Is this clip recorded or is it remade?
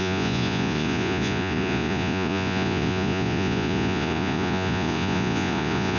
remade